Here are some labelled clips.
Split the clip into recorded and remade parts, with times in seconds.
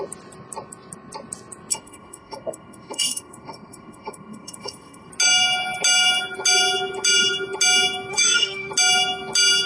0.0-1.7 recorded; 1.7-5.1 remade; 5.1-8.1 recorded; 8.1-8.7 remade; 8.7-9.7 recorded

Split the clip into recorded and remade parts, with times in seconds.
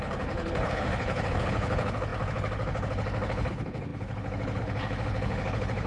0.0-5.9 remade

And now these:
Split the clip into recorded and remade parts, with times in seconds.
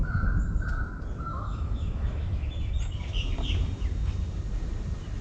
0.0-1.3 recorded; 1.3-2.7 remade; 2.7-5.2 recorded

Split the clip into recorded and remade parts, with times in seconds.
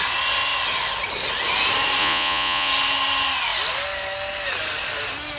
0.0-2.0 recorded; 2.0-2.7 remade; 2.7-5.4 recorded